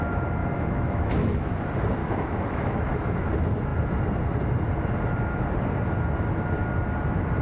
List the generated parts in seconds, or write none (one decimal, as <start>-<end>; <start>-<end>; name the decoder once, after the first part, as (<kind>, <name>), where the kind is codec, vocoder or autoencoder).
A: 0.4-1.5 (autoencoder, DAC-VAE); 2.0-2.8